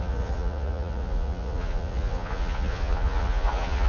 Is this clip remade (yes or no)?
yes